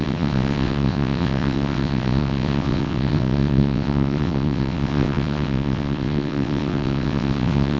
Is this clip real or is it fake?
fake